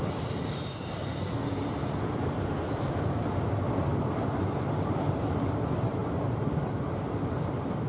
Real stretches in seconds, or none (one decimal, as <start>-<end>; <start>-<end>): 1.1-4.0